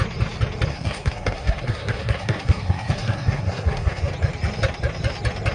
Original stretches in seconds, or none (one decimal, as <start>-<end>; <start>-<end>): 0.0-0.7; 4.0-5.5